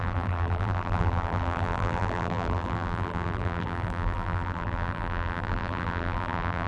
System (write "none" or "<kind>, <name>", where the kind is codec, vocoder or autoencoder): vocoder, BigVGAN v2